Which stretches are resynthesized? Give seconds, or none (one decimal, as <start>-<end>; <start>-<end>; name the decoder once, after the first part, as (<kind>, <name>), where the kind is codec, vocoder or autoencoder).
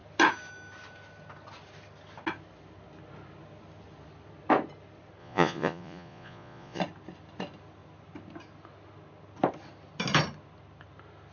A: 5.2-6.8 (vocoder, Vocos)